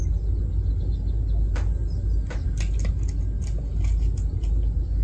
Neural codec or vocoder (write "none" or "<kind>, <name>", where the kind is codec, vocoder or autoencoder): none